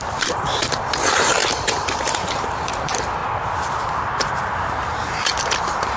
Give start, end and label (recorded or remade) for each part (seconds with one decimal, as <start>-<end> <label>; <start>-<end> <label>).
0.0-3.2 remade; 3.2-3.9 recorded; 3.9-6.0 remade